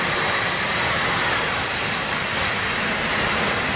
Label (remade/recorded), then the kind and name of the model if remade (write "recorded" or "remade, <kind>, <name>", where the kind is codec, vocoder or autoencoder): recorded